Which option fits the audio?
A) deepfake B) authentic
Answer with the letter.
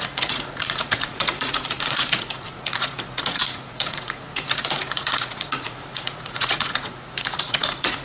A